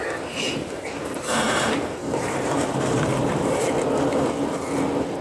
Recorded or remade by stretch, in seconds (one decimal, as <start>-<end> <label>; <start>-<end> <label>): 0.0-0.6 recorded; 0.6-3.7 remade; 3.7-5.2 recorded